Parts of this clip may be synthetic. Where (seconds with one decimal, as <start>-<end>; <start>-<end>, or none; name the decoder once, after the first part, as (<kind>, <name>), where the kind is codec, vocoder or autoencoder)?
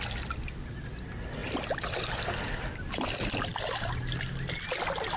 none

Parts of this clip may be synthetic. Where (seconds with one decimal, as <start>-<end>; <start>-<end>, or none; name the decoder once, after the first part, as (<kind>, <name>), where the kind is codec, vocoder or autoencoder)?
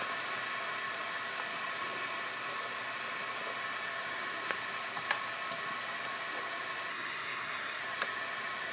6.9-7.8 (codec, SNAC)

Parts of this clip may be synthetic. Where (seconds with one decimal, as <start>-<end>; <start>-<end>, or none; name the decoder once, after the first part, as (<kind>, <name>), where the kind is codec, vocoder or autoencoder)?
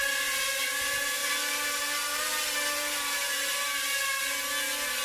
1.2-4.2 (vocoder, BigVGAN v2)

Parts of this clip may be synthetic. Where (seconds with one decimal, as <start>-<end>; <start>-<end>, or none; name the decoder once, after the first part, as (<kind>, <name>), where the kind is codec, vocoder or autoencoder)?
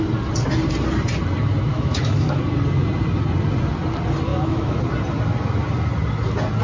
1.7-2.4 (autoencoder, DAC-VAE); 4.3-4.8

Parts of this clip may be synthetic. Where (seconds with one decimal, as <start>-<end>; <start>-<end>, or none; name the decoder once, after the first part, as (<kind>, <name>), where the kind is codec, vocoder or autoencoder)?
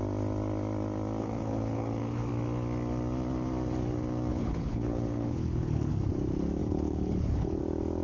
1.2-2.3 (codec, HILCodec); 4.3-5.9; 6.6-7.6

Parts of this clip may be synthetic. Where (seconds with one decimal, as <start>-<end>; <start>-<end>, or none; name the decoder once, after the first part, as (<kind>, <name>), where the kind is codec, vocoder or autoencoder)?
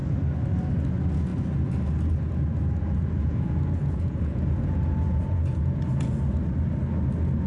2.8-6.3 (vocoder, Vocos)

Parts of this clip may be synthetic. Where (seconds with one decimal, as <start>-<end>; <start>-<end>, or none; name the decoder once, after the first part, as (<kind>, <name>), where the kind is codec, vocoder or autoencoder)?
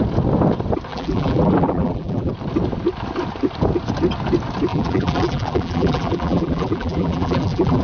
0.9-2.3 (vocoder, BigVGAN v2); 4.7-7.8